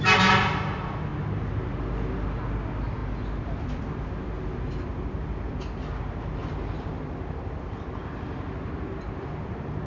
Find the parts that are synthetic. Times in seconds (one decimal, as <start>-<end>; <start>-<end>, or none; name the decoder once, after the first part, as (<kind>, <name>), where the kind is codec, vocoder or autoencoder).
none